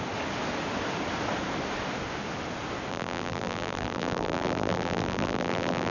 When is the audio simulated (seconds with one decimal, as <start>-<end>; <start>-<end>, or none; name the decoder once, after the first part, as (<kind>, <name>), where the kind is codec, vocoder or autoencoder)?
2.9-5.9 (vocoder, BigVGAN v2)